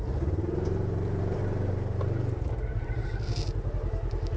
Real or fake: real